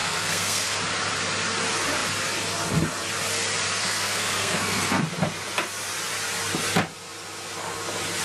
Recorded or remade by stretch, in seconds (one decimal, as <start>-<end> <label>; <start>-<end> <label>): 0.0-0.8 remade; 0.8-3.8 recorded; 3.8-5.0 remade; 5.0-8.2 recorded